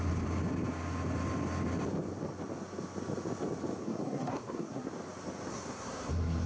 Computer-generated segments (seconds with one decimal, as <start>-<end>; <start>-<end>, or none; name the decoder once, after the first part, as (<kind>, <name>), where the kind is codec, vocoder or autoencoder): 3.8-4.9 (codec, SNAC); 5.5-6.5